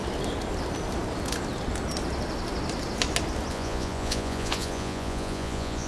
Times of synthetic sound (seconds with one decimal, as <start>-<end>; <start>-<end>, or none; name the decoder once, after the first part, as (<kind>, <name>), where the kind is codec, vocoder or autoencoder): 3.5-5.9 (vocoder, Vocos)